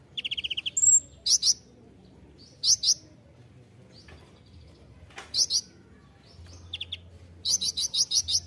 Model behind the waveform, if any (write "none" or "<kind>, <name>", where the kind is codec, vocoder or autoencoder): none